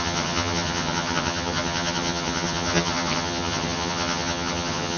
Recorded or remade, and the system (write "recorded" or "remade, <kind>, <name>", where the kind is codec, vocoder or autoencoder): remade, vocoder, HiFi-GAN